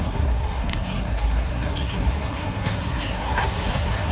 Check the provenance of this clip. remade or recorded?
remade